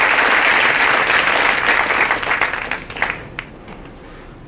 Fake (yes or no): no